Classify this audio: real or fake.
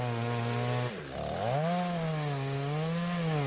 real